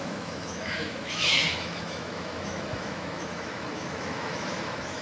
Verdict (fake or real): fake